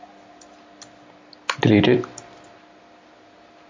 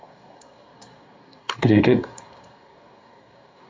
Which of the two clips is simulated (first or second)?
second